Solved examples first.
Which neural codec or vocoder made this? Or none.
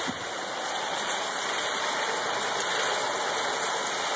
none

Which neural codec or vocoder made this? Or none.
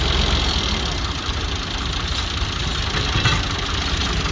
none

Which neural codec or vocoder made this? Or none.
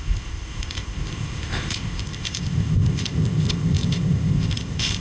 codec, ZipCodec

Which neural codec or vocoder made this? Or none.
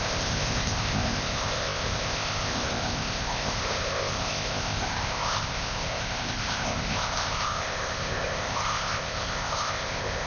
codec, ZipCodec